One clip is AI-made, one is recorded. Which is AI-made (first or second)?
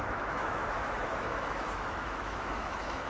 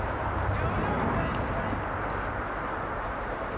first